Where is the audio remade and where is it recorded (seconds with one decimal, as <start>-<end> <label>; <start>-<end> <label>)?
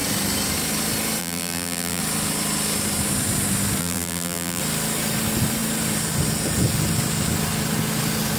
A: 0.0-1.2 recorded; 1.2-2.0 remade; 2.0-3.8 recorded; 3.8-4.6 remade; 4.6-8.4 recorded